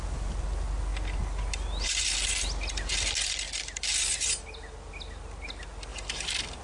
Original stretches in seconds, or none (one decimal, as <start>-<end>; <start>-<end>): 0.0-6.6